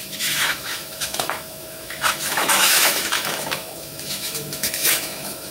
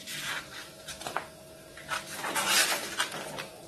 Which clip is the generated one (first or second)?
first